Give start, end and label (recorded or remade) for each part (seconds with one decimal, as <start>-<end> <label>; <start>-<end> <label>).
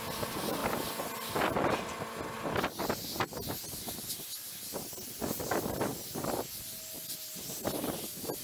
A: 0.0-8.4 recorded